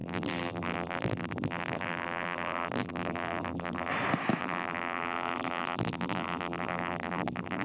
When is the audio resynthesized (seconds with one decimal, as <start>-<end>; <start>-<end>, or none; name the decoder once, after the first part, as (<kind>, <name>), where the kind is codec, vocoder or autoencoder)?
0.0-3.9 (vocoder, BigVGAN v2); 4.4-7.6